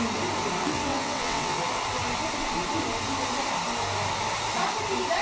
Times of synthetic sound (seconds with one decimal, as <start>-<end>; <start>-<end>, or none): 0.6-1.6

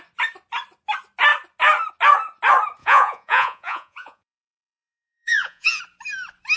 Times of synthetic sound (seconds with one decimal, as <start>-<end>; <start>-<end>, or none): 2.8-5.8

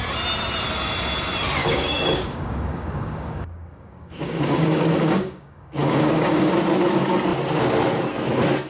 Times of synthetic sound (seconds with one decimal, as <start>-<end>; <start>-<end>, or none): 1.6-6.5

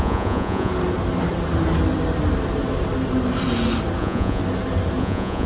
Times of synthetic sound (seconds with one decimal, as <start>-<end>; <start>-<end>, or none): 0.0-0.7; 4.0-4.4; 5.0-5.5

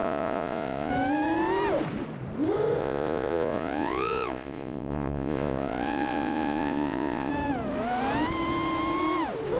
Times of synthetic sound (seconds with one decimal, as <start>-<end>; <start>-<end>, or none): 0.0-0.9; 2.8-7.3